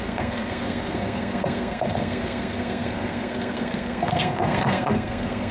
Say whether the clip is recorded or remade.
remade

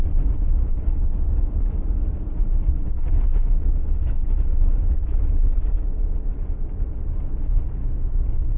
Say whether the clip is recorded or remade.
recorded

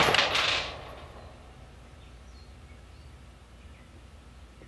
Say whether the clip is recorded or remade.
recorded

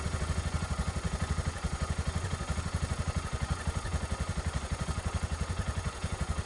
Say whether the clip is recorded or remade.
remade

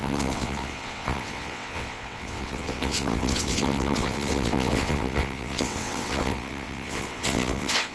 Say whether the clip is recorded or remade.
remade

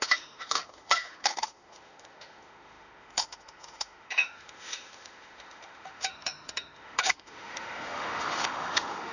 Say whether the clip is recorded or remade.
remade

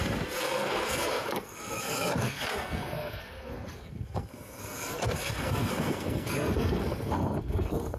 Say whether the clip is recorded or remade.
remade